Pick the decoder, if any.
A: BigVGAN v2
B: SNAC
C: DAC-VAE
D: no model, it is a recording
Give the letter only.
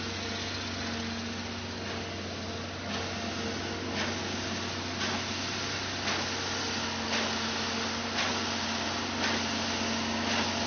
D